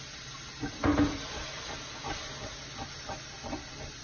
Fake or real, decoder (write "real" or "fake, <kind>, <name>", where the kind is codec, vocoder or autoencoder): real